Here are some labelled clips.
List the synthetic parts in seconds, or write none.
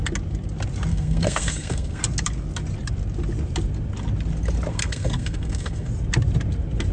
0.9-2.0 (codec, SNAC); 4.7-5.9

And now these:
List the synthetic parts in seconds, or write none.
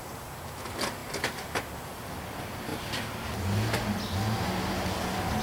none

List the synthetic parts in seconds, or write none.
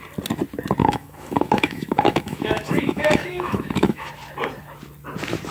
0.8-4.1 (autoencoder, DAC-VAE)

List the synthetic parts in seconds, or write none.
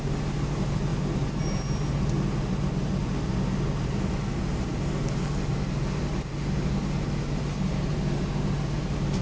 none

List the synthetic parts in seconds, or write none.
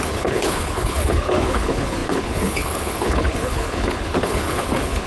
0.0-5.1 (codec, HILCodec)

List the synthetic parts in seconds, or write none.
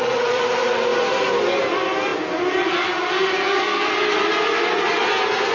none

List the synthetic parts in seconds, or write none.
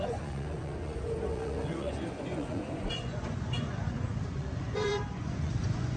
0.0-6.0 (vocoder, Vocos)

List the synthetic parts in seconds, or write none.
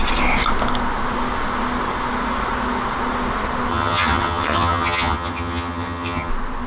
3.7-6.3 (vocoder, HiFi-GAN)